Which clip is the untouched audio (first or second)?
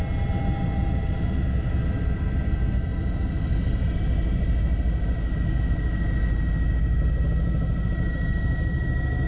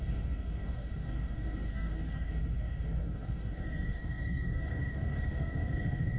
first